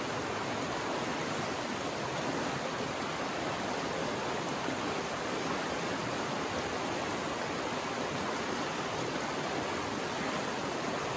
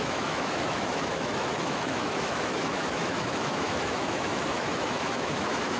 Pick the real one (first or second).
first